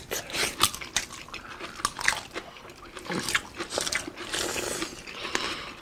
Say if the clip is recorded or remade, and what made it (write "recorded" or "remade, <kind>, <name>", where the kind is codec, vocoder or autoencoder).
recorded